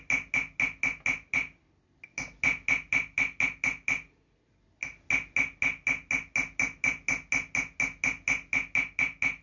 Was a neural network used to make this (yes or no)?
no